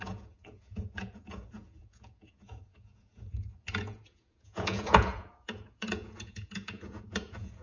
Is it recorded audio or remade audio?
remade